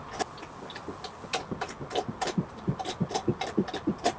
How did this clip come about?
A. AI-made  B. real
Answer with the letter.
B